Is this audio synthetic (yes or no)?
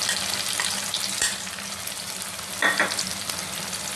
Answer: no